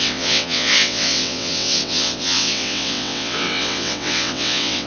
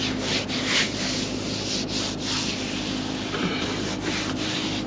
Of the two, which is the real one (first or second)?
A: second